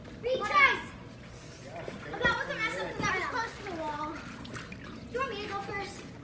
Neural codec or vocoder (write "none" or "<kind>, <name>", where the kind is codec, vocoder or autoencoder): none